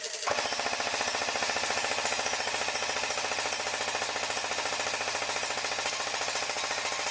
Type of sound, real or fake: real